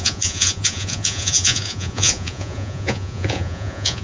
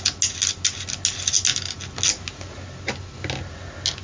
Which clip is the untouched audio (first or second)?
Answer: second